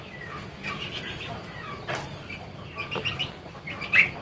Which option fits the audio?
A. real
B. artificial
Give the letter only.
A